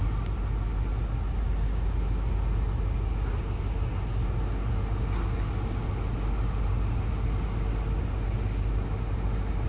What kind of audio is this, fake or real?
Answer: real